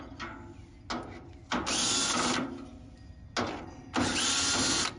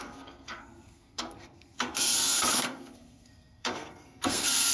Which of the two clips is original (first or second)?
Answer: first